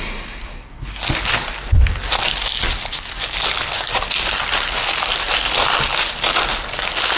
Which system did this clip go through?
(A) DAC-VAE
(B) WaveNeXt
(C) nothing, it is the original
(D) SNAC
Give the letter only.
C